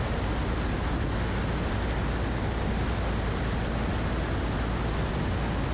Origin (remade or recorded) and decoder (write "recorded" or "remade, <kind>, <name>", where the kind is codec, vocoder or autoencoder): recorded